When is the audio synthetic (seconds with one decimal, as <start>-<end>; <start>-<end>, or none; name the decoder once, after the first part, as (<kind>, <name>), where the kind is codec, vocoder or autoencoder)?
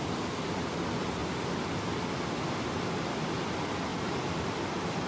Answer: 3.9-5.1 (vocoder, BigVGAN v2)